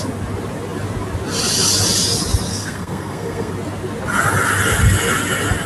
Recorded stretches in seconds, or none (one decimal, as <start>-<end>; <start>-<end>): 0.0-2.5; 3.5-5.7